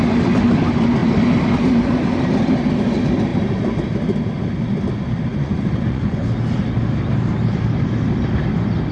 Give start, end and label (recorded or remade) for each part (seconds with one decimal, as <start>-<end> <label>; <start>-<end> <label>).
0.0-5.3 recorded; 5.3-6.2 remade; 6.2-8.9 recorded